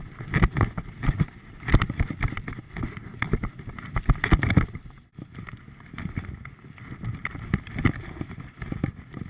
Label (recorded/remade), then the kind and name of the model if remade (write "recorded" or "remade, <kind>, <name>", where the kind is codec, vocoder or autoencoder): recorded